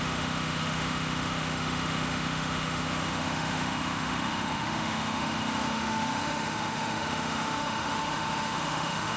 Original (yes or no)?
no